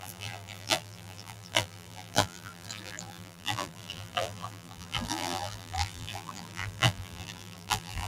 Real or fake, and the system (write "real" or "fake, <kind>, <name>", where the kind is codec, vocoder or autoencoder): fake, vocoder, BigVGAN v2